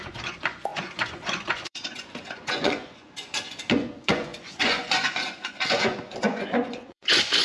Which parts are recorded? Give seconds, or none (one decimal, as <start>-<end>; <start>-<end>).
none